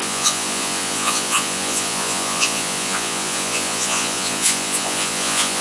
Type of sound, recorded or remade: remade